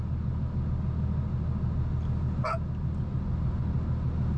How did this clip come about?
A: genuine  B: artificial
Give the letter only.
A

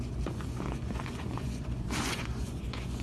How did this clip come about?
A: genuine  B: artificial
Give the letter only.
B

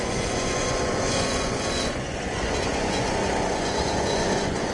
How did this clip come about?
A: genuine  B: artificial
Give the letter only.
B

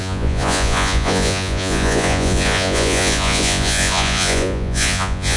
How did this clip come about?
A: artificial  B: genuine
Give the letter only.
A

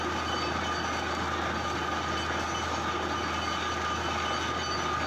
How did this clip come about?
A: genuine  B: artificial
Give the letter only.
A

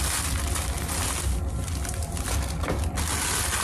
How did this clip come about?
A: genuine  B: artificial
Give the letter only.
A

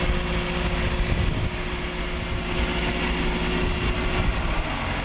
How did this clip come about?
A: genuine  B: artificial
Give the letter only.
A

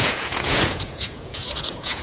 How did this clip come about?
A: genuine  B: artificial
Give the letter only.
B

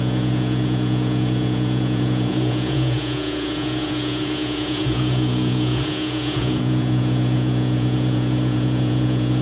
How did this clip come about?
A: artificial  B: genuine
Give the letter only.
A